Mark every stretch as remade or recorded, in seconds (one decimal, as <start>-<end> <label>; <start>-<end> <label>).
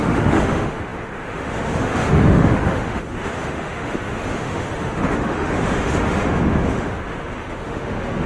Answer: 0.0-8.3 remade